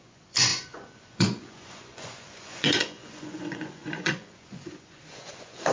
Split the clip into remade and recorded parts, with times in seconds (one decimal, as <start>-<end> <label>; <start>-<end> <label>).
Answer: 0.0-5.7 remade